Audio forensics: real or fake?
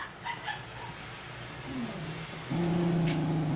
real